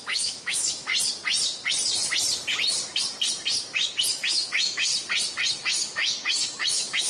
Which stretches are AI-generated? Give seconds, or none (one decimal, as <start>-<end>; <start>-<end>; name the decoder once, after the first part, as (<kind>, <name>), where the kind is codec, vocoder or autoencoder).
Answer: 0.0-0.9 (autoencoder, DAC-VAE); 4.1-4.9; 5.5-7.1